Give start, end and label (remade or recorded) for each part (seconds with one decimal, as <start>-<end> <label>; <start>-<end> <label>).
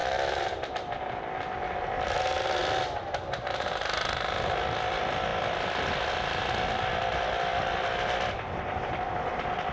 0.0-7.5 recorded; 7.5-8.9 remade; 8.9-9.7 recorded